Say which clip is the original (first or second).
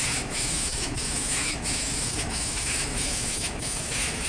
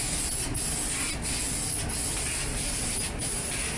second